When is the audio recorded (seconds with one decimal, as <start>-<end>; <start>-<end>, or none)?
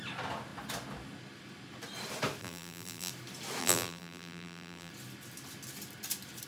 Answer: 0.0-2.4; 3.1-3.6; 4.9-6.5